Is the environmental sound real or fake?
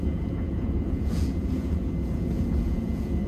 fake